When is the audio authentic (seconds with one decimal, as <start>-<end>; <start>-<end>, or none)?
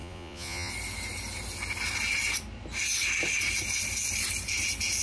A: 0.7-5.0